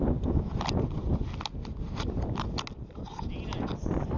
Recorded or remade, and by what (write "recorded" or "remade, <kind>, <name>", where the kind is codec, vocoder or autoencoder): recorded